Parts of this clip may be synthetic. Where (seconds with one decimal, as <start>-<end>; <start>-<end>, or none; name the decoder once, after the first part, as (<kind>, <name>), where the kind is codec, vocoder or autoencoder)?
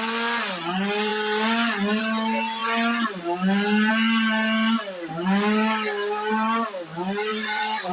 7.3-7.9 (vocoder, Vocos)